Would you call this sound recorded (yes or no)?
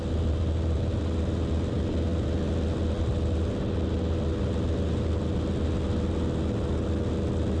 yes